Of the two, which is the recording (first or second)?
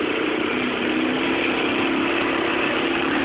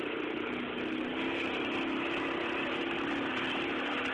second